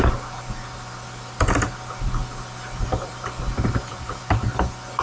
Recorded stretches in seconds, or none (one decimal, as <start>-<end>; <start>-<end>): 0.0-2.2; 4.2-5.0